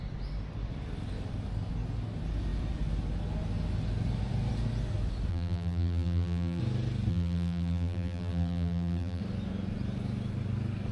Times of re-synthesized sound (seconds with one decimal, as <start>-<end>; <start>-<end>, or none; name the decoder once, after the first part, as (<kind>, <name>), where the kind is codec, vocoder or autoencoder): 5.3-6.6 (vocoder, BigVGAN v2); 7.1-9.2